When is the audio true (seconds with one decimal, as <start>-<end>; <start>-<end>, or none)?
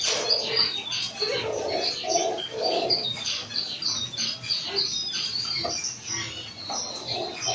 0.0-2.5; 3.5-7.5